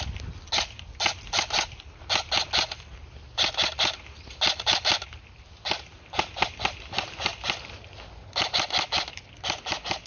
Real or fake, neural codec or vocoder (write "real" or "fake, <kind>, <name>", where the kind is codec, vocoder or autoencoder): real